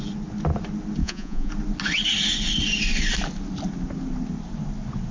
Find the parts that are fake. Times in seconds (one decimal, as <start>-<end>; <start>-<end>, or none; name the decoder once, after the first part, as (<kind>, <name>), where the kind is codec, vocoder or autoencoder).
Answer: 1.0-1.5 (vocoder, Vocos)